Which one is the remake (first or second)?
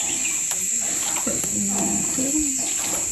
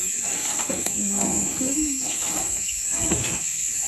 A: second